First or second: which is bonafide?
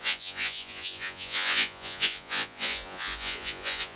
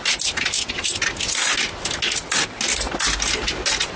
second